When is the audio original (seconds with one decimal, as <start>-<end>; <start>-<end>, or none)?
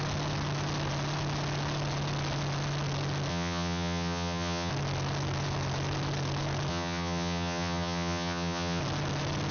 0.0-3.3; 4.7-6.7; 8.8-9.5